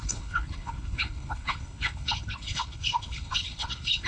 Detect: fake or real fake